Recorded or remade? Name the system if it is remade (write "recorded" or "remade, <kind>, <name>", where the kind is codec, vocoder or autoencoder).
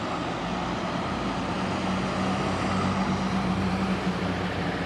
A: recorded